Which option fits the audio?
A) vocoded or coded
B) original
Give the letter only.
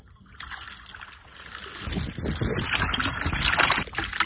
B